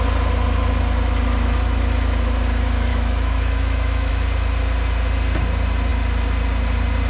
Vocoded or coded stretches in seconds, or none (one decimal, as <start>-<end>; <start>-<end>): 2.9-4.1